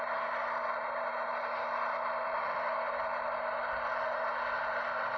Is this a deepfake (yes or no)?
no